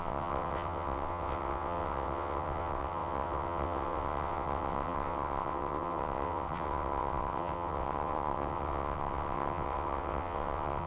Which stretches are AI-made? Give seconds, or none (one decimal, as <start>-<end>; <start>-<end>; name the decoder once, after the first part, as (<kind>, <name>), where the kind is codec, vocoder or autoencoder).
0.0-10.9 (vocoder, WaveNeXt)